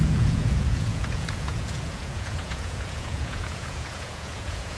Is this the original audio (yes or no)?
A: no